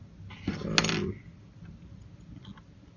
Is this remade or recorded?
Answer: recorded